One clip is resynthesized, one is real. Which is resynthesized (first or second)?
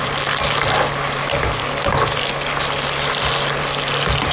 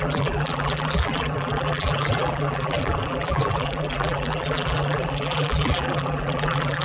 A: second